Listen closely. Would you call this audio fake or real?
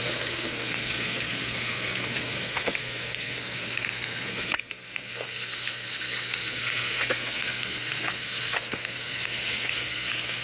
fake